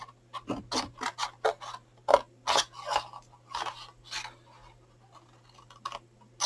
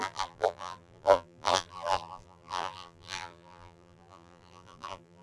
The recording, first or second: first